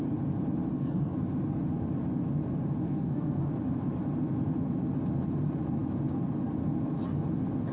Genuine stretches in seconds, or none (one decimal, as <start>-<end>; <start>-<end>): 0.0-0.7; 1.2-2.8; 3.5-7.7